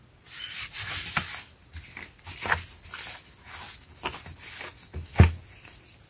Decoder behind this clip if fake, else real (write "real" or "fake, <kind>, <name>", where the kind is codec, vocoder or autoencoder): real